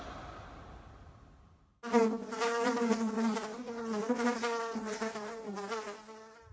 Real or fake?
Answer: real